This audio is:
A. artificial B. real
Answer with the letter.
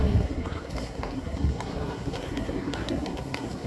A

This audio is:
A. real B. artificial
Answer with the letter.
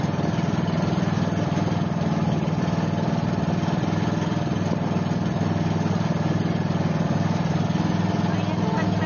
A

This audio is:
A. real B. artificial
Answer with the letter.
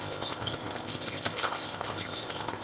B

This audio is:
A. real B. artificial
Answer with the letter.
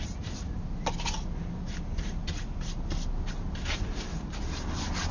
A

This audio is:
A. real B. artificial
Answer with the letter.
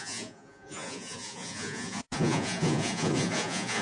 B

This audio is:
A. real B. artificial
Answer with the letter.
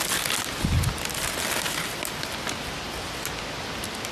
A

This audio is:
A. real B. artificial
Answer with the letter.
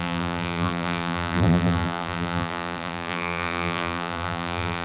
B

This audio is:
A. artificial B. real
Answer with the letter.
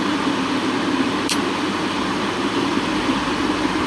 A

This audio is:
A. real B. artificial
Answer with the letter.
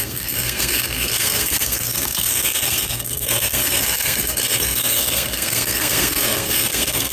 B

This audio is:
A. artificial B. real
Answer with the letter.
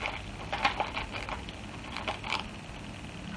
B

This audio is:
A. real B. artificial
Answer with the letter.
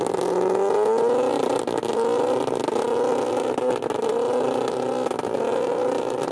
A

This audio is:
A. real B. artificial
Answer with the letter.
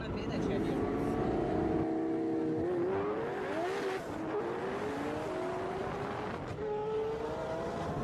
A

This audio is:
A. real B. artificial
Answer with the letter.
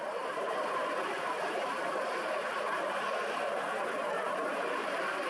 A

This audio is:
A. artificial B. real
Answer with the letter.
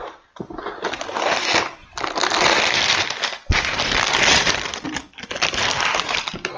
B